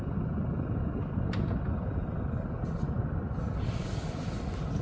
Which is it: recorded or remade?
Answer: recorded